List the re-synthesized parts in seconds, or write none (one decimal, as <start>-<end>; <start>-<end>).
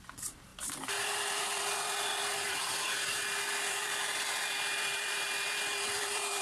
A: 2.5-6.4